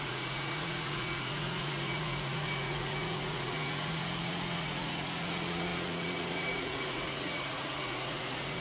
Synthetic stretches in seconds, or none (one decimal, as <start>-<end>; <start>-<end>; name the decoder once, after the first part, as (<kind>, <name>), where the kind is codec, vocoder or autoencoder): 0.0-8.6 (vocoder, Vocos)